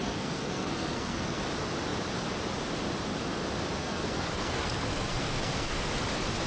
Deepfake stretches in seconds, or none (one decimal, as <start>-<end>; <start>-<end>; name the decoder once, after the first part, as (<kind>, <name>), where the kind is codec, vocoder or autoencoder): 0.0-1.4 (codec, SNAC); 3.8-5.9